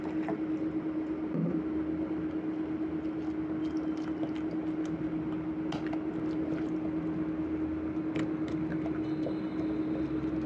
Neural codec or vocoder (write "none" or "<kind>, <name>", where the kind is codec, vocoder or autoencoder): none